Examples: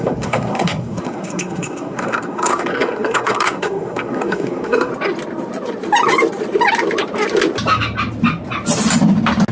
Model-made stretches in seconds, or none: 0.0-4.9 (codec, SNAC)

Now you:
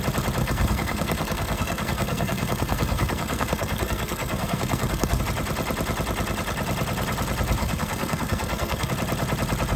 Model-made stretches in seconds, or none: 0.4-5.2 (codec, SNAC); 7.6-8.9